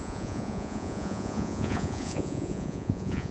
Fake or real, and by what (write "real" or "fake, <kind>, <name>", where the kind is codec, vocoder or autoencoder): fake, vocoder, Vocos